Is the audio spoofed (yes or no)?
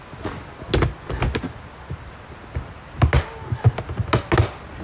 no